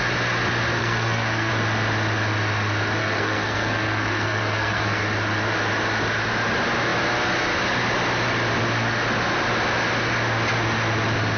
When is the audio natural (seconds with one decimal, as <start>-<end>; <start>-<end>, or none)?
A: 0.0-0.8; 1.5-3.0; 5.0-11.4